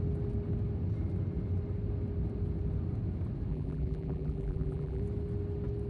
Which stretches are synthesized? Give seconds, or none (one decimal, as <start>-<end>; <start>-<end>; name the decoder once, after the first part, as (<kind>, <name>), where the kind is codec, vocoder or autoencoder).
3.5-5.0 (vocoder, BigVGAN v2)